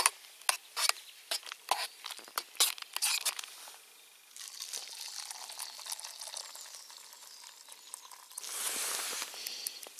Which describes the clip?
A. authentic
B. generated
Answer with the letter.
A